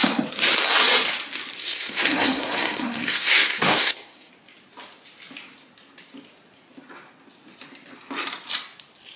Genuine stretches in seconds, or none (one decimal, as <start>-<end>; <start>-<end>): 0.0-1.6; 4.3-9.2